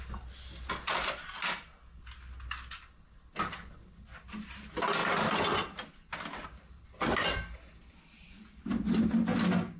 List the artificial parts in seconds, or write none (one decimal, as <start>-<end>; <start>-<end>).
none